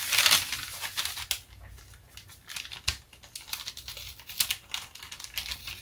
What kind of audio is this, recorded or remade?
recorded